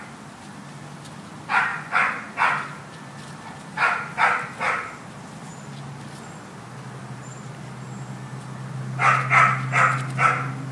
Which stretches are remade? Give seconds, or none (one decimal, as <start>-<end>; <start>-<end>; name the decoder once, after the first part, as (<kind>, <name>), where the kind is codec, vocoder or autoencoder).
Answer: 1.7-2.3 (vocoder, Vocos)